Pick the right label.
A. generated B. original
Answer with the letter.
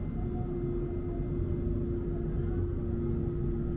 B